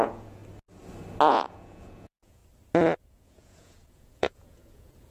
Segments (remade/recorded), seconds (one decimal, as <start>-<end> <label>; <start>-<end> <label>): 0.0-0.4 remade; 0.4-1.3 recorded; 1.3-2.4 remade; 2.4-3.1 recorded; 3.1-5.1 remade